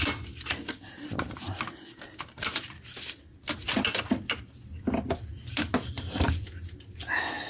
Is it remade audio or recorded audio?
recorded